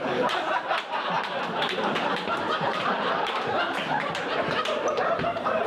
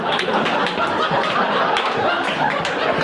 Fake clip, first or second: first